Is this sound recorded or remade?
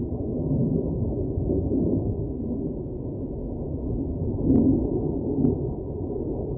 recorded